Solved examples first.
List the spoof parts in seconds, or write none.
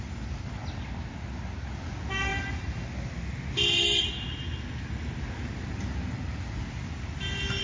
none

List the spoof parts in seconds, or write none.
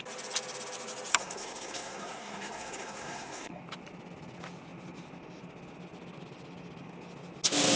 1.1-3.6